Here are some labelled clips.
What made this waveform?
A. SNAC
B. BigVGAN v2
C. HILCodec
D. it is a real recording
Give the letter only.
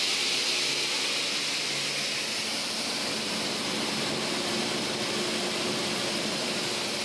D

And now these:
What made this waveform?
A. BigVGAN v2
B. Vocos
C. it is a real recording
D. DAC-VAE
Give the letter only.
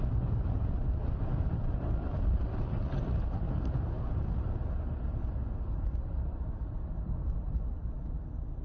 A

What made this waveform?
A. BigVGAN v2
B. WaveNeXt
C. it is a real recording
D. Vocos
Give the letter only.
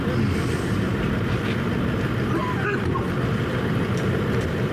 C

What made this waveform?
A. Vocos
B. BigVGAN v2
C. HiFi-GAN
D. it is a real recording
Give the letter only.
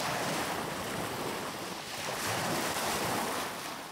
D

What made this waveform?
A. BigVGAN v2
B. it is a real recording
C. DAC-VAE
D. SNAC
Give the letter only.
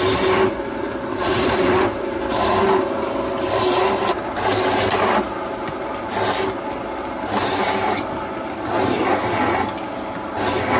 B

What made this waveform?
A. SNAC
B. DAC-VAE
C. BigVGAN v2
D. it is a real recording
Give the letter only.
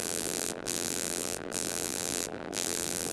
C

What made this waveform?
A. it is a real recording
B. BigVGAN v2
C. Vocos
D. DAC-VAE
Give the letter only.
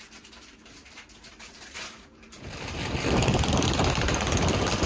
B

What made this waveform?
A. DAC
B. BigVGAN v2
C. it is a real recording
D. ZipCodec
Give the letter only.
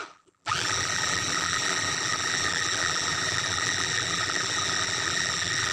B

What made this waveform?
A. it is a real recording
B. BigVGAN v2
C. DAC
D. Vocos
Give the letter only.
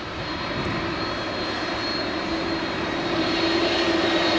B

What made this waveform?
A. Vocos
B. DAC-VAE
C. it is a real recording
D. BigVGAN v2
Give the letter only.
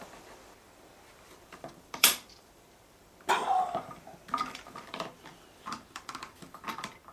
D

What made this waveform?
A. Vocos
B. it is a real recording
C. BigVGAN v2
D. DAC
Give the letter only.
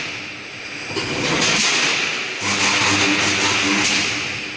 B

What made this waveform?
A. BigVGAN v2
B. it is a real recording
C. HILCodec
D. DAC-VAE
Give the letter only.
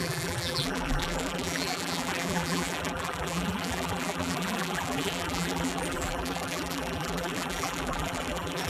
A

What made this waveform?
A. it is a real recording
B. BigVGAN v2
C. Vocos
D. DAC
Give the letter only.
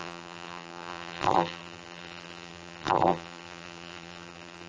B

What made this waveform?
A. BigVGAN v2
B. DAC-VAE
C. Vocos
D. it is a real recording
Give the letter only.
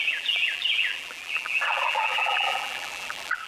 A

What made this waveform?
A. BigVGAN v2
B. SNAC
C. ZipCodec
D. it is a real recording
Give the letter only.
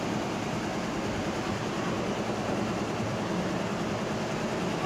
D